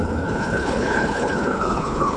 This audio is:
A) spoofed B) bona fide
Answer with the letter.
A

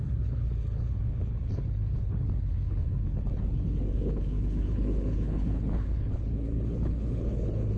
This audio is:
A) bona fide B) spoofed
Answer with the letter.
B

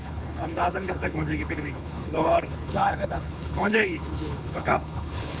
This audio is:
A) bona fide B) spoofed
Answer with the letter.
B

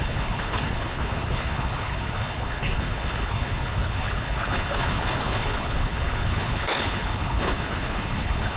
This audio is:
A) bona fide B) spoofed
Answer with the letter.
B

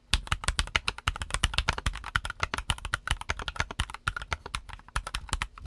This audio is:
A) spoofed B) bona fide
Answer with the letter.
B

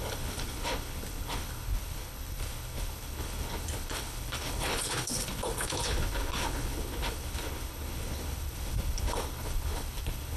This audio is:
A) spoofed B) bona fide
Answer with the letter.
A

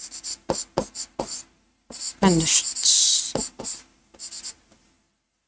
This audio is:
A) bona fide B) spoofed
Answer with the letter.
A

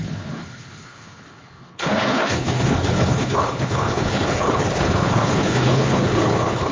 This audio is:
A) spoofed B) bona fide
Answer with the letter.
A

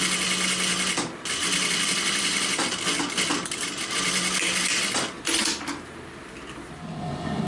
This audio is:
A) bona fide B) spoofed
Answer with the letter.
A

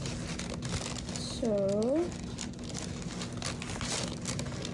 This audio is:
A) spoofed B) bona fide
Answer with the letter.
B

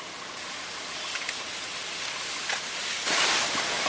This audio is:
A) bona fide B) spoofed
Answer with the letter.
A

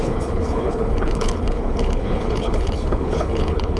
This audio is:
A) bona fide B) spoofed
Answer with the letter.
B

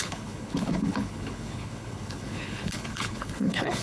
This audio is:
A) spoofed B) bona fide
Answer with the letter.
A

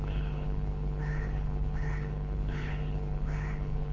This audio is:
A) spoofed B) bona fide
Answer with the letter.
A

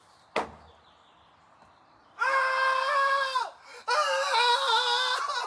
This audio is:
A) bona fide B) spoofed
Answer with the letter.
A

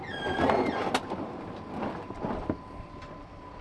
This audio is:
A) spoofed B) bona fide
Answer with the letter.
B